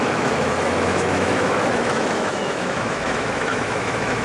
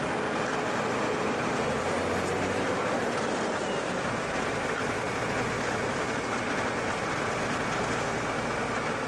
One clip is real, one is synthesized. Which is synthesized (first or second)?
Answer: first